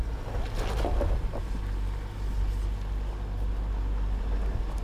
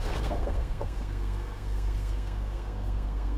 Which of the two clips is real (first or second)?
first